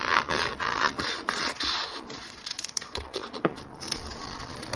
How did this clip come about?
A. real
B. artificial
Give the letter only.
B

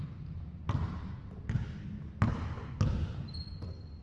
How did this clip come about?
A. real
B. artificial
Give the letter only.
A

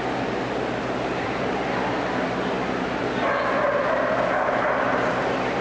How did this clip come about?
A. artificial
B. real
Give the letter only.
B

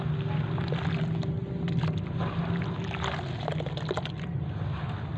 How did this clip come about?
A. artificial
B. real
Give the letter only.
B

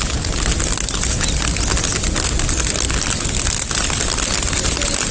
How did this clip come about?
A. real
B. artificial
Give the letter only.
A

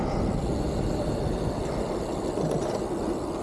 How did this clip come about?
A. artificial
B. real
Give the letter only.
B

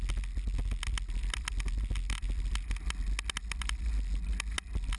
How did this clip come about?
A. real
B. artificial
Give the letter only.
A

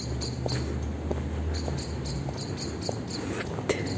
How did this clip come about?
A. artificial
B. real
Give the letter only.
B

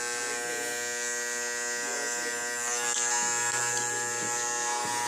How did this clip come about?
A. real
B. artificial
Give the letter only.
A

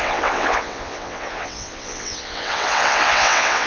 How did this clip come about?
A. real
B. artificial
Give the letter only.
B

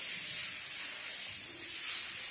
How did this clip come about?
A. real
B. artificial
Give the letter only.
A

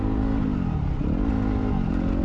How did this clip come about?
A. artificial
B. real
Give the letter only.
B